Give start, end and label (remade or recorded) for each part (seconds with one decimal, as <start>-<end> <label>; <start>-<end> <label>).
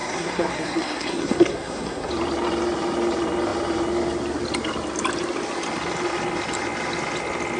0.0-2.1 remade; 2.1-7.6 recorded